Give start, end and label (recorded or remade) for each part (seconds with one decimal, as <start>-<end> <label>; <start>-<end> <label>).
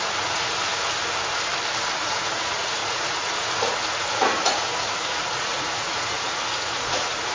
0.0-0.7 remade; 0.7-1.9 recorded; 1.9-7.3 remade